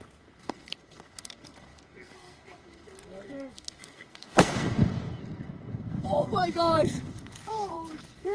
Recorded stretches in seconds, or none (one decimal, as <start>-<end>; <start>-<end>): none